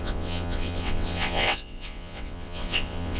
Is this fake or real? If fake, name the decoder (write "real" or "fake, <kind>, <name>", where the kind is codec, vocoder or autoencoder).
fake, vocoder, WaveNeXt